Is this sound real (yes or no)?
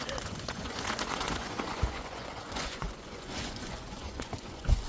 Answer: no